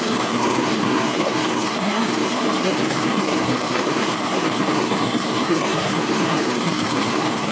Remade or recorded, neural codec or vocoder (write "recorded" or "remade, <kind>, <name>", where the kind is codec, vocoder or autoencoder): remade, codec, SNAC